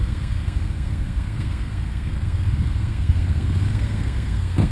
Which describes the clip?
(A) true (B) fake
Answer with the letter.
B